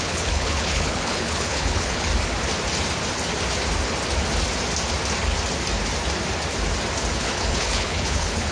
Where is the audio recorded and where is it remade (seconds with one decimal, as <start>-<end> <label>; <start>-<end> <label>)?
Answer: 0.0-2.1 remade; 2.1-7.2 recorded; 7.2-8.5 remade